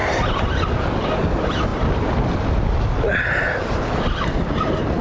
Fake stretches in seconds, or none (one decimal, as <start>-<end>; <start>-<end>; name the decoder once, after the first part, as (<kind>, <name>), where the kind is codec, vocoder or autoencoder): none